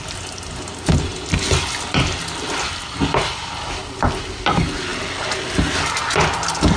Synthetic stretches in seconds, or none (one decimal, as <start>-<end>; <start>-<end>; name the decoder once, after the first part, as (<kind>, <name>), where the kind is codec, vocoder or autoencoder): none